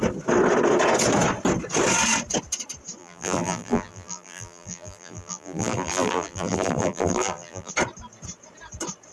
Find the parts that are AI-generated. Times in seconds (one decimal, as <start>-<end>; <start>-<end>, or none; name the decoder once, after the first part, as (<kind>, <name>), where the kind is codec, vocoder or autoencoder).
3.0-7.7 (vocoder, BigVGAN v2)